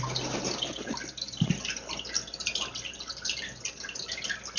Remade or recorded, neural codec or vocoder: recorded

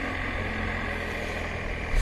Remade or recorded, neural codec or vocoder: recorded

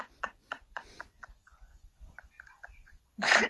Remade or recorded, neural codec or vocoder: remade, vocoder, Vocos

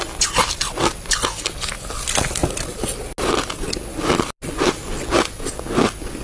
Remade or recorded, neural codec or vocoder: recorded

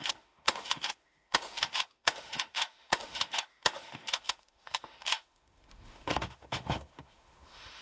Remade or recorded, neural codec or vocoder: remade, autoencoder, DAC-VAE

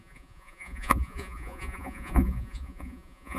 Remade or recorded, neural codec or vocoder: remade, vocoder, Vocos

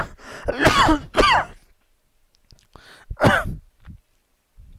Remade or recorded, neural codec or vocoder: recorded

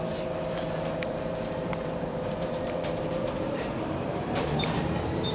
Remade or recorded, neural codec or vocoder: remade, vocoder, BigVGAN v2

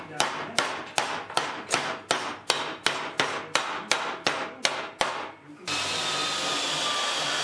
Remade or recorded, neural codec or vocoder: recorded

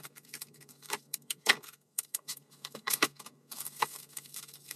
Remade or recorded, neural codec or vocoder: remade, codec, SNAC